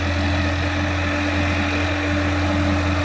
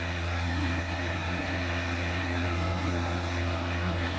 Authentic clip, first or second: first